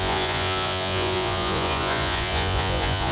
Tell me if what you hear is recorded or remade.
remade